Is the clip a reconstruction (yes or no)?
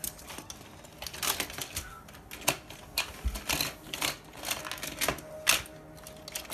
no